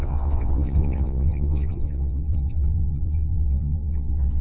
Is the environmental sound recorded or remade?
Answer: remade